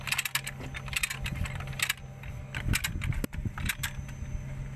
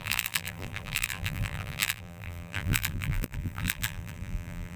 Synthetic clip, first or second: second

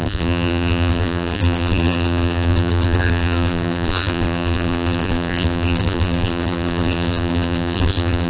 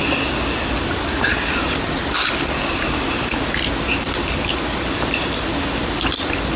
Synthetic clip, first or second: first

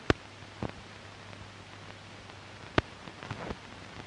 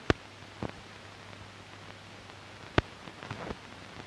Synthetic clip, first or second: first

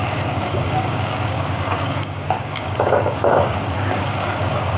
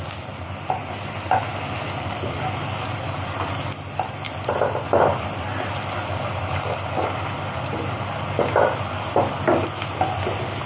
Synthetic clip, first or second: first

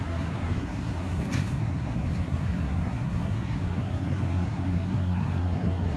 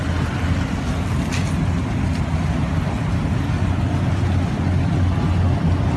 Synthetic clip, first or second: first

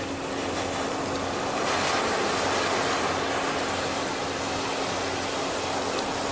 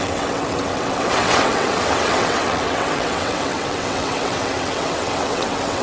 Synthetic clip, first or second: second